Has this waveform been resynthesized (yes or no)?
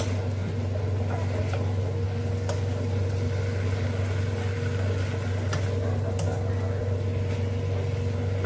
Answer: no